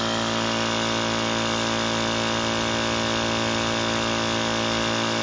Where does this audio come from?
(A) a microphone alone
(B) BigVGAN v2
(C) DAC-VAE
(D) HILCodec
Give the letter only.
A